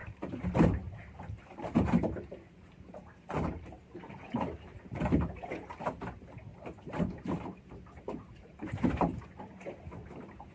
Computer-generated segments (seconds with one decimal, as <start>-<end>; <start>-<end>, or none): 0.0-5.2; 6.5-9.2